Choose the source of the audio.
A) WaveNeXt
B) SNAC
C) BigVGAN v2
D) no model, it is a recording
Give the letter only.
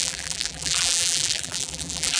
C